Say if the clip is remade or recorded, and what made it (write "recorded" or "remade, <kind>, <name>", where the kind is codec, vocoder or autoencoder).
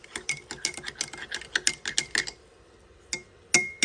recorded